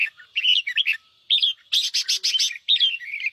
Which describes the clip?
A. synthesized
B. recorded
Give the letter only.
B